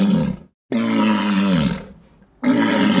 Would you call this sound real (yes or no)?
yes